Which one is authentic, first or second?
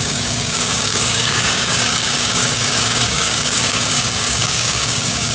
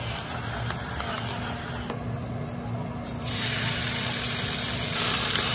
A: second